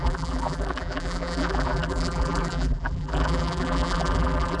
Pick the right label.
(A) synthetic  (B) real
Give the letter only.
A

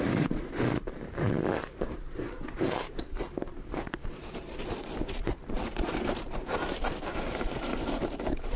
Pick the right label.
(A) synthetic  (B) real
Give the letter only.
A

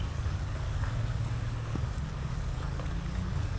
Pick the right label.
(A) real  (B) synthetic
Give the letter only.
B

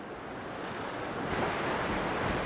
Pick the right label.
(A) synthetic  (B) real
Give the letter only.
B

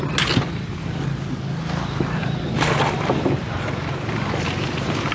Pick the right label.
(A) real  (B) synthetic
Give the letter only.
A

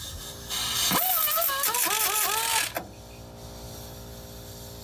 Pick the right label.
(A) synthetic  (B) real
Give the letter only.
B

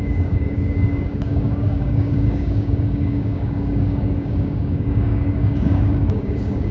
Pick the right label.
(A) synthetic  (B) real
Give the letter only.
A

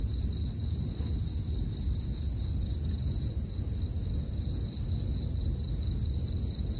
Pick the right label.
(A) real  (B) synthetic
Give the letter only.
A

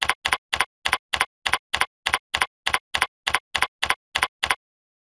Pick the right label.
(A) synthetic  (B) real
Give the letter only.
B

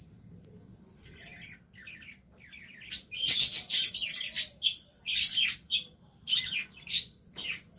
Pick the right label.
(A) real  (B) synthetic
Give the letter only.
A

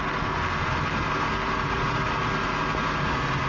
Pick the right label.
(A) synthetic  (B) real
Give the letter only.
B